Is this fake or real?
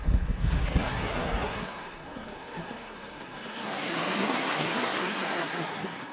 fake